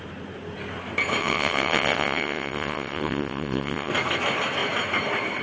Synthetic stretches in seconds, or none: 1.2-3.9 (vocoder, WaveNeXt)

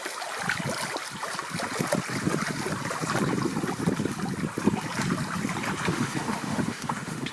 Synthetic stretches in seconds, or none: 5.9-7.3 (autoencoder, DAC-VAE)

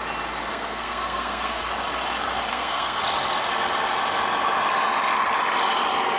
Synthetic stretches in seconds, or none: 0.5-1.6 (codec, SNAC); 2.5-3.0

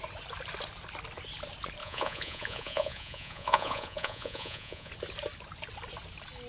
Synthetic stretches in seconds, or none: 1.8-4.9 (vocoder, Vocos)